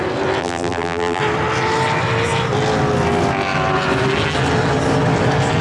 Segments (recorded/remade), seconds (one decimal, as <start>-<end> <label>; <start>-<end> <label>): 0.0-0.4 recorded; 0.4-1.2 remade; 1.2-5.6 recorded